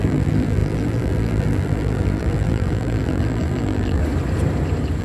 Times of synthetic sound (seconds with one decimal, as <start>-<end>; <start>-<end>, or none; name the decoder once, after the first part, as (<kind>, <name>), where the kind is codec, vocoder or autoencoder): 0.0-4.0 (vocoder, BigVGAN v2)